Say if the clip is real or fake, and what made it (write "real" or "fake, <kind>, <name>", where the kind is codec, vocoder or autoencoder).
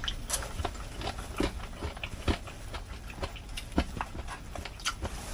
real